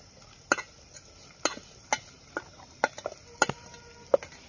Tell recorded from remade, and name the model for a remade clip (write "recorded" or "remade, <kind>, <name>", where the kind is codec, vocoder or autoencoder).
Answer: recorded